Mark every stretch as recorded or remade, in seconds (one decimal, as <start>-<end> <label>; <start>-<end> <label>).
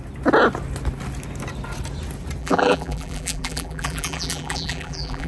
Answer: 0.0-2.4 recorded; 2.4-5.3 remade